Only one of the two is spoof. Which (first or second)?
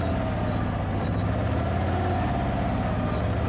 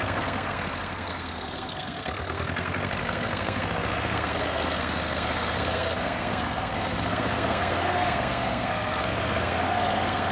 second